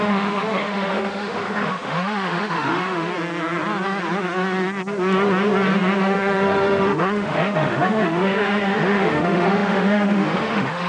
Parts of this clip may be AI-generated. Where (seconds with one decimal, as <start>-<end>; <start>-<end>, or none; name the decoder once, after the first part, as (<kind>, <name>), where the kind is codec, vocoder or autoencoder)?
0.0-3.1 (autoencoder, DAC-VAE); 6.0-10.9